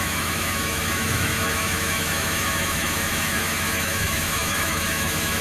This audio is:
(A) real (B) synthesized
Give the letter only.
B